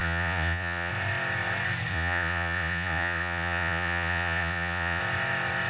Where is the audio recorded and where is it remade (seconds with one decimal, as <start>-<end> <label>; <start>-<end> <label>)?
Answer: 0.0-0.9 remade; 0.9-1.9 recorded; 1.9-5.0 remade; 5.0-5.7 recorded